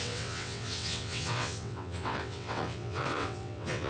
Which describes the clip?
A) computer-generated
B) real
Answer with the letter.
A